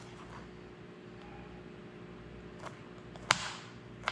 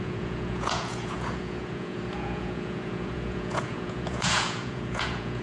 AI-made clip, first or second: second